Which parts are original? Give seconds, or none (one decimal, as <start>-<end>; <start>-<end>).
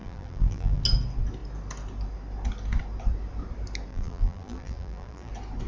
0.8-3.9; 5.3-5.7